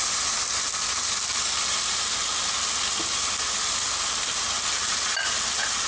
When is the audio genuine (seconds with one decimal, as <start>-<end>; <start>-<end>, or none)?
0.0-5.9